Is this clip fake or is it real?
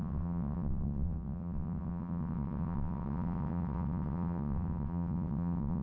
fake